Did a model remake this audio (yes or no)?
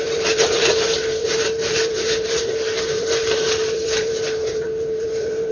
yes